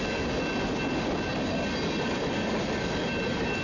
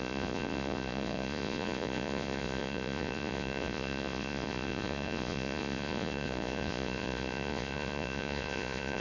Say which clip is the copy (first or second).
second